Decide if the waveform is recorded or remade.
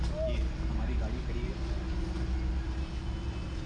recorded